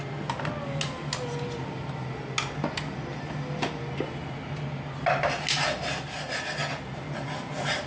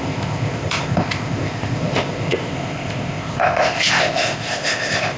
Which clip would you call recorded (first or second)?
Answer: first